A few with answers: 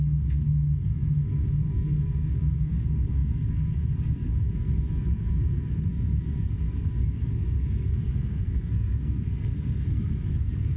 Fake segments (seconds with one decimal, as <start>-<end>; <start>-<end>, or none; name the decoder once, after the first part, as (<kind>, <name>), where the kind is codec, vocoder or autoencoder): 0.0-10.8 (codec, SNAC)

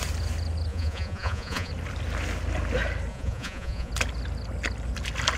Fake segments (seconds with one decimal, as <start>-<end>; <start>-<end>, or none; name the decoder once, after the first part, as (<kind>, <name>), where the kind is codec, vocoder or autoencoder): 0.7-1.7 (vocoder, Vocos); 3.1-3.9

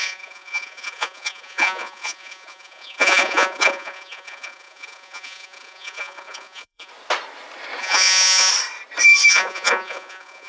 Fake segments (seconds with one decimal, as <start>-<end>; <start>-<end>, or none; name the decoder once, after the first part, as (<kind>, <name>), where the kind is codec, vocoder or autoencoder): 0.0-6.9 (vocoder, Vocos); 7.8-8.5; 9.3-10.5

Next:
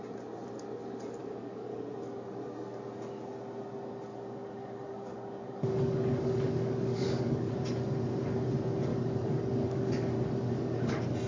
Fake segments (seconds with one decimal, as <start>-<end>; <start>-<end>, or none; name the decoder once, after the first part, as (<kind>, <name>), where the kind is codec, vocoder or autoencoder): 1.2-1.8 (codec, DAC); 4.1-7.5; 8.9-10.9

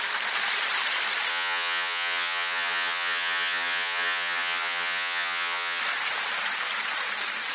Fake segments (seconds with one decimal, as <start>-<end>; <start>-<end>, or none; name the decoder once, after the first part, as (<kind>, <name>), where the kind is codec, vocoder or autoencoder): 1.3-5.8 (vocoder, HiFi-GAN)